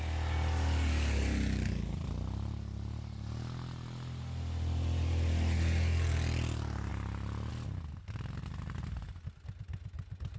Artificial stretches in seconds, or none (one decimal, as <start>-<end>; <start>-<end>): none